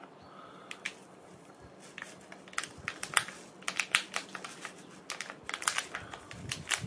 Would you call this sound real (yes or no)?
yes